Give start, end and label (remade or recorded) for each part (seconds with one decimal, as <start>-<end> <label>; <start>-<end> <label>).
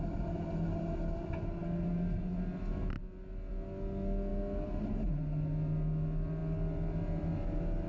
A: 0.0-1.6 recorded; 1.6-2.3 remade; 2.3-7.9 recorded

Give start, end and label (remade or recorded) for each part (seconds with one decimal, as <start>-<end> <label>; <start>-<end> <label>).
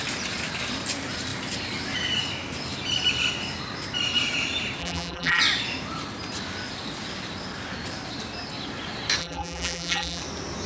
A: 0.0-4.8 recorded; 4.8-5.4 remade; 5.4-9.2 recorded; 9.2-10.2 remade; 10.2-10.7 recorded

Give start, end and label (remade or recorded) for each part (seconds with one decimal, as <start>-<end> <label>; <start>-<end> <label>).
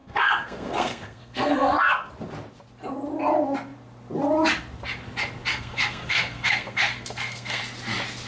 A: 0.0-2.1 remade; 2.1-5.5 recorded; 5.5-7.6 remade; 7.6-8.3 recorded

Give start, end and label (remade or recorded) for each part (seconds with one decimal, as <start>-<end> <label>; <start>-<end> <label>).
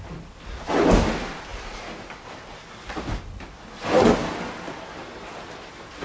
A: 0.0-6.0 recorded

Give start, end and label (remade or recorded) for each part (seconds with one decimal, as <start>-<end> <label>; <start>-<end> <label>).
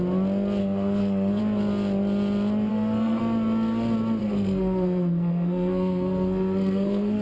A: 0.0-0.6 recorded; 0.6-1.4 remade; 1.4-2.7 recorded; 2.7-3.2 remade; 3.2-4.2 recorded; 4.2-7.2 remade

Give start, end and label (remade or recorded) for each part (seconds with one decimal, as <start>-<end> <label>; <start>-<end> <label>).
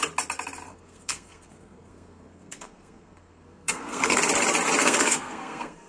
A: 0.0-0.7 recorded; 0.7-4.2 remade; 4.2-4.8 recorded; 4.8-5.9 remade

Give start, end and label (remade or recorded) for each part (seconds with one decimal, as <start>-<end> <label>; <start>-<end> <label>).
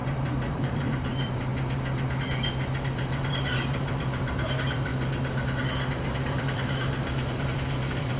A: 0.0-1.5 remade; 1.5-2.8 recorded; 2.8-4.9 remade; 4.9-5.9 recorded; 5.9-8.2 remade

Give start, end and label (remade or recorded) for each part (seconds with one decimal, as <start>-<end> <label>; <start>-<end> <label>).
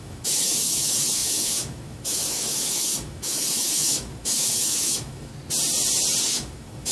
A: 0.0-5.3 remade; 5.3-6.2 recorded; 6.2-6.9 remade